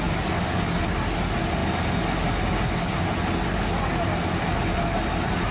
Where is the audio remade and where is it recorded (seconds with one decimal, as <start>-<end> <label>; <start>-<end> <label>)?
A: 0.0-5.5 recorded

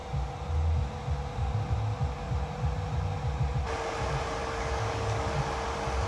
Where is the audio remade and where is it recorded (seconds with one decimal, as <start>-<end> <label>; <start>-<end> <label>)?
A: 0.0-4.4 recorded; 4.4-5.4 remade; 5.4-6.1 recorded

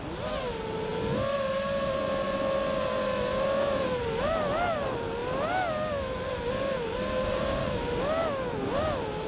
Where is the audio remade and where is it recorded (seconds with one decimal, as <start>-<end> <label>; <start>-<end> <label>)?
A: 0.0-9.3 recorded

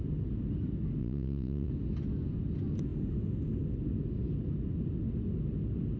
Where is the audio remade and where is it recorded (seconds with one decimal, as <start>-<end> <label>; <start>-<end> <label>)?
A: 0.0-1.0 recorded; 1.0-1.7 remade; 1.7-6.0 recorded